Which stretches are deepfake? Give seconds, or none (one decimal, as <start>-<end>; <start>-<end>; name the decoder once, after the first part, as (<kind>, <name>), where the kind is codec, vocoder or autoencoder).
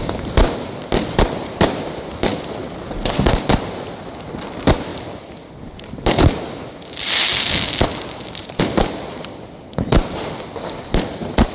none